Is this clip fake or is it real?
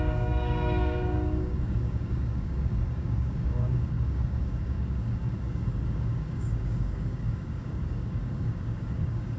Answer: fake